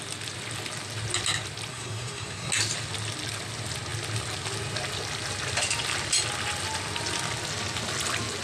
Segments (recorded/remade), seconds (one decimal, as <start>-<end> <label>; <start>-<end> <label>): 0.0-1.7 recorded; 1.7-2.5 remade; 2.5-8.4 recorded